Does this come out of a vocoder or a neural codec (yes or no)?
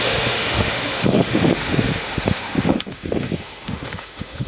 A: yes